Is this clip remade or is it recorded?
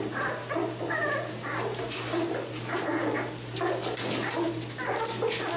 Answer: recorded